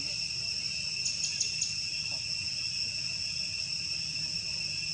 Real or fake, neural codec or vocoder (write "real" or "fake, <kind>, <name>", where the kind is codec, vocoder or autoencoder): real